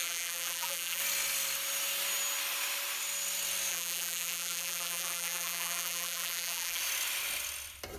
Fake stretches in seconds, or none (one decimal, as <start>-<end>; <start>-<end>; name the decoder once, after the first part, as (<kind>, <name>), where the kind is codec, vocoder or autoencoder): 0.0-1.0 (vocoder, BigVGAN v2); 3.7-6.8